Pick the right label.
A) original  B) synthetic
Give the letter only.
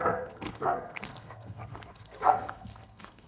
B